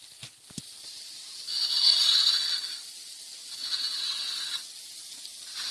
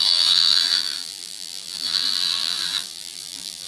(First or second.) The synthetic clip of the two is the second